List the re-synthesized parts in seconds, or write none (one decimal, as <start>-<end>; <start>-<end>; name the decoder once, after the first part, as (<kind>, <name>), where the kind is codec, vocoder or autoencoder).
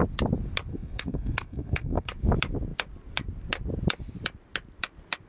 0.7-2.1 (codec, SNAC)